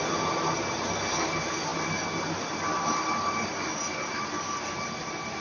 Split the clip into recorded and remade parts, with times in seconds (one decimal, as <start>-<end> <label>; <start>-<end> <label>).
0.0-5.4 recorded